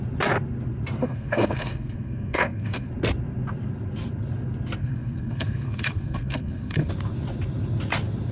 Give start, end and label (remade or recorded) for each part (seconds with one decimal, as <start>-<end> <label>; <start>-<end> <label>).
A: 0.0-1.0 recorded; 1.0-2.9 remade; 2.9-4.8 recorded; 4.8-6.9 remade; 6.9-8.3 recorded